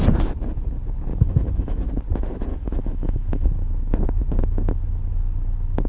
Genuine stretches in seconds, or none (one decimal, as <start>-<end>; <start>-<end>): 0.0-1.1; 1.9-2.5; 3.5-5.9